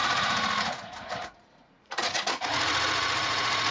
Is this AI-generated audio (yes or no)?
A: yes